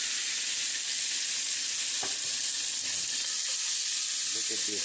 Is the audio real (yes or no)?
yes